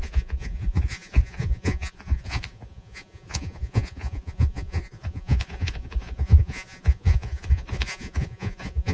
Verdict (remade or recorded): remade